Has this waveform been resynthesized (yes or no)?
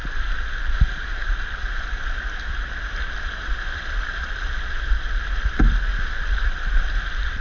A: no